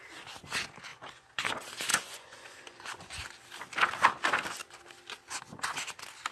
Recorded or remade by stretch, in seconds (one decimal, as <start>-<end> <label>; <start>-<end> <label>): 0.0-0.9 recorded; 0.9-1.5 remade; 1.5-1.9 recorded; 1.9-3.2 remade; 3.2-6.3 recorded